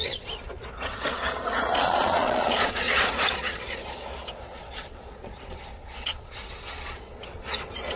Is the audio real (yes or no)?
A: no